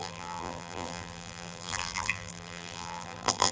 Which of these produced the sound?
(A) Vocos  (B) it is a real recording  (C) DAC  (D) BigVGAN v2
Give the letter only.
D